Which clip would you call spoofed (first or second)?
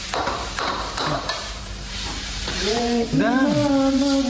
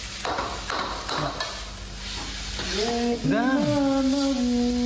first